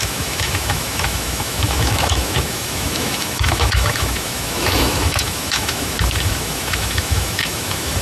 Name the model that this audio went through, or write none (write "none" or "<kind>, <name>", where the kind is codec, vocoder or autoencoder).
autoencoder, DAC-VAE